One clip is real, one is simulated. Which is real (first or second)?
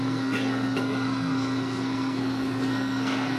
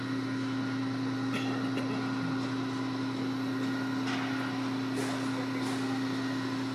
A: second